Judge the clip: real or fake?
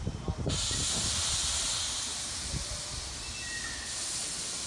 real